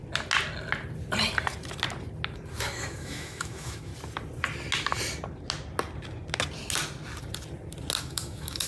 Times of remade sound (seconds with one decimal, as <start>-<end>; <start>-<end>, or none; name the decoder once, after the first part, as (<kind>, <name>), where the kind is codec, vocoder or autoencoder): 2.6-3.9 (autoencoder, DAC-VAE); 8.0-8.7